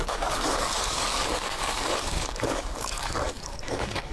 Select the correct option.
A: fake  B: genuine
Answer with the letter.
A